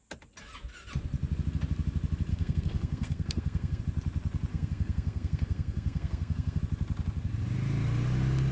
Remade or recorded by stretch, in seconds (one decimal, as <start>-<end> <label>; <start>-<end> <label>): 0.0-2.3 recorded; 2.3-3.8 remade; 3.8-4.5 recorded; 4.5-6.6 remade; 6.6-8.5 recorded